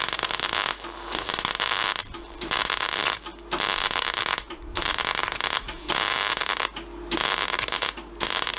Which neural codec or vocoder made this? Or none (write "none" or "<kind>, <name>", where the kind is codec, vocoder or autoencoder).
none